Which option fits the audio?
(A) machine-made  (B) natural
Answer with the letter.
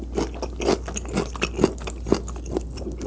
B